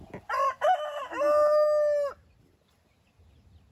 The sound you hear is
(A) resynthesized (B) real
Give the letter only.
B